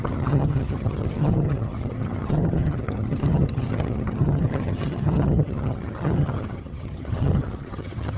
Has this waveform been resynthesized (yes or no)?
yes